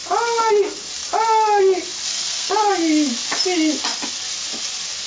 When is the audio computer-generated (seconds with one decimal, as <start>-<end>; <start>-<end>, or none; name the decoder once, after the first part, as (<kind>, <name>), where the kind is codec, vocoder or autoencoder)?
2.1-2.7 (codec, SNAC)